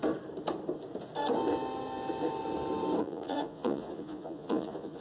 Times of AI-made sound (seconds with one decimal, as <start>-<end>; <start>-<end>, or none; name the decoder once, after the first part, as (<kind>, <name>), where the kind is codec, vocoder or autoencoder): 3.0-5.0 (vocoder, Vocos)